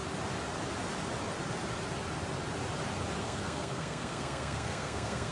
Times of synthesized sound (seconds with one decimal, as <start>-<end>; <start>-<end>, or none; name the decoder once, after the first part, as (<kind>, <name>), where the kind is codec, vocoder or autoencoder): 3.2-5.3 (codec, SNAC)